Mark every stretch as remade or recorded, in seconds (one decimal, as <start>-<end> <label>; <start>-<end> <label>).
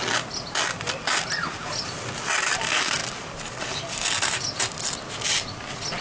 0.0-6.0 recorded